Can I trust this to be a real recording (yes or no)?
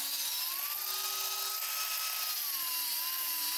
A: yes